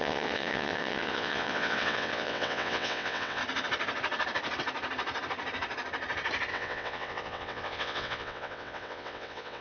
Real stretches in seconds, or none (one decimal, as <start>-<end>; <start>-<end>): 3.4-6.5